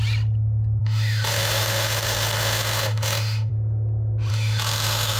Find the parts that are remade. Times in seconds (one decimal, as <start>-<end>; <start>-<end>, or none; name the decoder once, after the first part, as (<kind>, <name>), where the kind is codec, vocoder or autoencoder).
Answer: 0.8-3.5 (autoencoder, DAC-VAE); 4.3-5.2